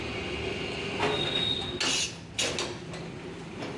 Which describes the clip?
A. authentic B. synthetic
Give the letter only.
A